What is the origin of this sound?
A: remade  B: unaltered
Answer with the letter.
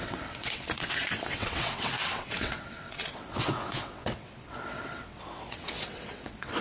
A